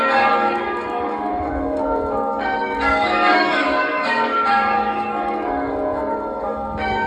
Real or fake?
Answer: fake